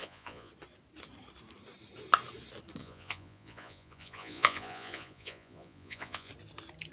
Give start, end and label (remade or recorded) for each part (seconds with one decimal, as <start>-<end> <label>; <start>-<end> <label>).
0.0-0.5 remade; 0.5-2.8 recorded; 2.8-6.3 remade; 6.3-6.9 recorded